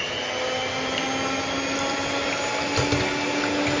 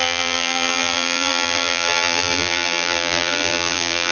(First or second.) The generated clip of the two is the second